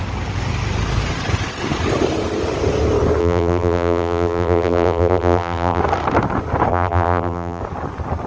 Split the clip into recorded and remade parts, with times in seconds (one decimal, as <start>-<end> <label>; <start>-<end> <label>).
0.0-3.2 recorded; 3.2-5.8 remade; 5.8-6.7 recorded; 6.7-7.6 remade; 7.6-8.3 recorded